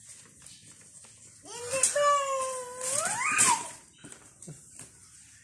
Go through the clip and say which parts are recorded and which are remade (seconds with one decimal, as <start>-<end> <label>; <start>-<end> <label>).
0.0-5.4 recorded

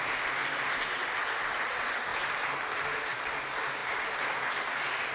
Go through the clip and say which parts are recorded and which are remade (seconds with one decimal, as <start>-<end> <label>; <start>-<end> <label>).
0.0-5.1 recorded

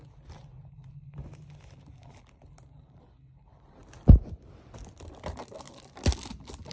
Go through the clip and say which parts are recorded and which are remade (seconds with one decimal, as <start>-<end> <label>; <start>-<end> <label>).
0.0-6.7 recorded

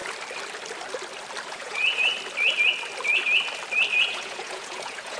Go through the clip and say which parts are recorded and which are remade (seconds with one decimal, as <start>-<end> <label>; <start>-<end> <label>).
0.0-1.5 recorded; 1.5-2.1 remade; 2.1-4.0 recorded; 4.0-5.2 remade

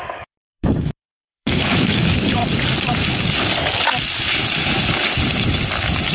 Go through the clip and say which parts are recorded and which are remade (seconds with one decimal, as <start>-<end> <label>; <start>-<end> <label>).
0.0-2.4 remade; 2.4-6.1 recorded